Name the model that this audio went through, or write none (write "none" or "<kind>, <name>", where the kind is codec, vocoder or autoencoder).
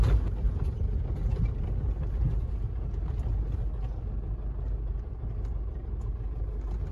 none